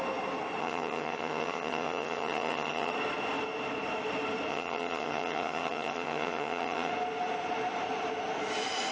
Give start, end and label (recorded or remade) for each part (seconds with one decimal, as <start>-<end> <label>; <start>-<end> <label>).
0.0-0.6 recorded; 0.6-2.9 remade; 2.9-4.5 recorded; 4.5-6.9 remade; 6.9-8.9 recorded